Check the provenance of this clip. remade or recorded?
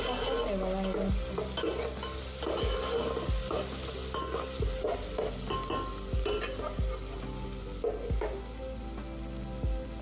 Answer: recorded